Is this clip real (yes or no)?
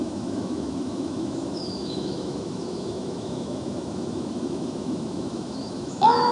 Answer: no